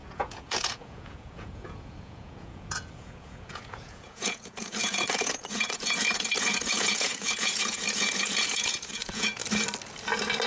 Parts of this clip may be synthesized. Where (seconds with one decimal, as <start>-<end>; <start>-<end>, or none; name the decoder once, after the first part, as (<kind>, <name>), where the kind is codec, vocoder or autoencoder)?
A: 0.0-9.4 (vocoder, Vocos)